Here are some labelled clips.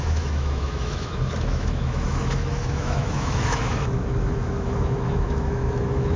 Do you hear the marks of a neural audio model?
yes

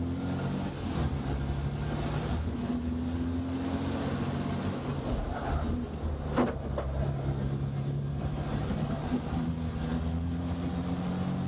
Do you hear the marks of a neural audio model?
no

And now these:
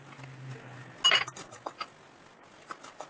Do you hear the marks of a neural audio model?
no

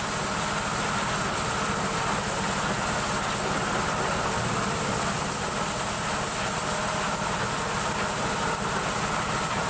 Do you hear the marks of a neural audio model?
no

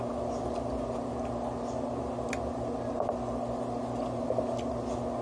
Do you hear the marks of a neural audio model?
no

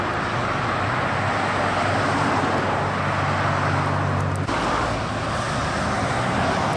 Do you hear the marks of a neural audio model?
no